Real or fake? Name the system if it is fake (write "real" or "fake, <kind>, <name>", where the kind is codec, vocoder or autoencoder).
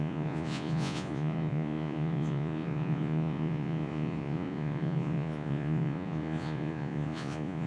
fake, vocoder, Vocos